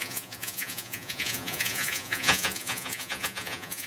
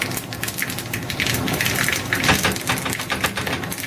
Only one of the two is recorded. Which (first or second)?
second